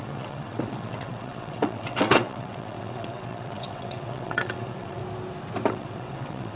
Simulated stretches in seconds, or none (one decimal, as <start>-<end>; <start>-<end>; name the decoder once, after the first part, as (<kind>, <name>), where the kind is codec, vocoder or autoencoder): 0.0-5.0 (vocoder, WaveNeXt); 5.7-6.6